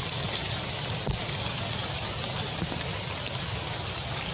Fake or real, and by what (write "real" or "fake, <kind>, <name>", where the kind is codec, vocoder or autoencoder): real